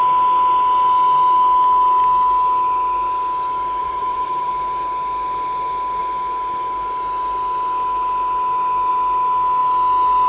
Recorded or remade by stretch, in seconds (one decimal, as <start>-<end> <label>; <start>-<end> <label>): 0.0-3.8 recorded; 3.8-4.5 remade; 4.5-10.3 recorded